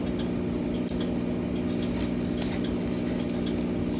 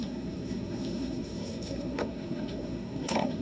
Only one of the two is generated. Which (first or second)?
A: second